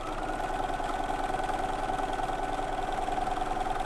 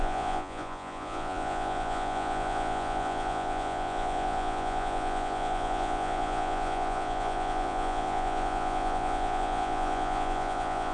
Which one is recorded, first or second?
first